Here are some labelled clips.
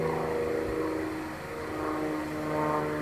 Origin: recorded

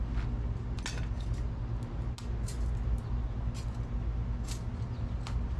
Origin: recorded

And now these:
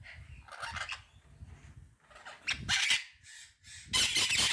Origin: recorded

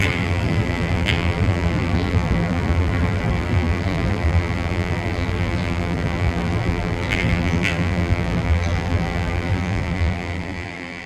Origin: remade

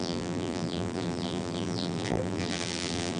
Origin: remade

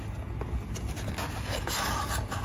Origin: recorded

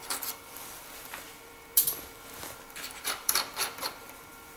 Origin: remade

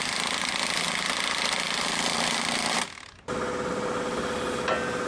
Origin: recorded